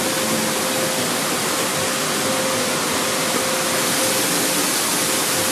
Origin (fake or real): real